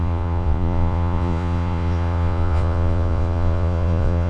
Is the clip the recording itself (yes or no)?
no